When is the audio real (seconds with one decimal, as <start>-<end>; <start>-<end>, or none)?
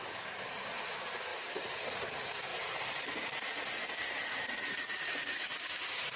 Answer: 0.0-1.3; 2.0-2.5